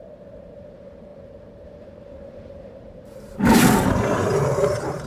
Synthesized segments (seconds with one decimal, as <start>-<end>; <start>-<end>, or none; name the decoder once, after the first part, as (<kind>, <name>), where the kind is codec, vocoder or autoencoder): 0.0-5.1 (vocoder, BigVGAN v2)